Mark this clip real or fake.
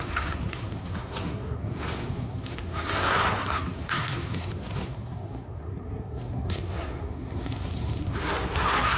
fake